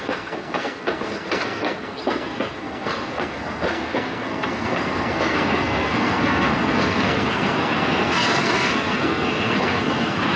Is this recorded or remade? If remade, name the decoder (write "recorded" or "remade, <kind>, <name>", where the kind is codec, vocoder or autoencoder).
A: remade, codec, SNAC